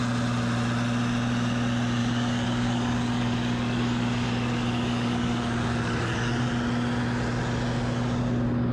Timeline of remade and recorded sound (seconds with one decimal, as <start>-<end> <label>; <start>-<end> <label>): 0.0-2.0 recorded; 2.0-6.4 remade; 6.4-8.7 recorded